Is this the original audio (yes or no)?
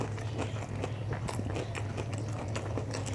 yes